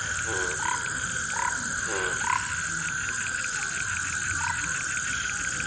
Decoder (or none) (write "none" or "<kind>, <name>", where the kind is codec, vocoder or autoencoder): none